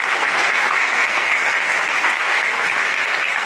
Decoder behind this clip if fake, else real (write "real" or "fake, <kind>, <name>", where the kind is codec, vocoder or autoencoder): fake, codec, SNAC